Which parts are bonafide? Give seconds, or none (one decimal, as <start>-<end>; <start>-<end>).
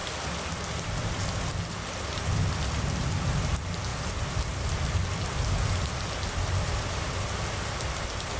0.0-8.4